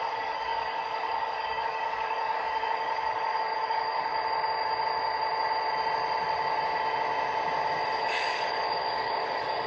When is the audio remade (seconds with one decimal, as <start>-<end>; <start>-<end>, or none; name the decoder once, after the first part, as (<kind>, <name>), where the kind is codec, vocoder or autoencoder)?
0.0-4.1 (codec, DAC); 8.0-9.7